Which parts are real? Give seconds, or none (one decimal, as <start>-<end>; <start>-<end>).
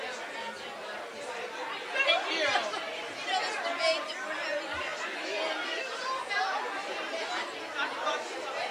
0.0-8.7